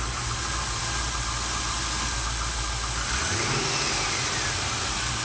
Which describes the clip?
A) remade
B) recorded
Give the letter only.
B